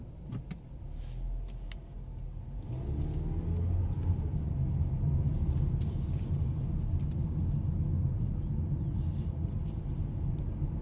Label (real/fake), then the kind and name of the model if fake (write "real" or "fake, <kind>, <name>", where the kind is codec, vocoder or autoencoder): real